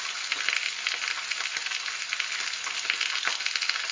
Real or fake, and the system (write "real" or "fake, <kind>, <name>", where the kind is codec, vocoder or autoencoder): real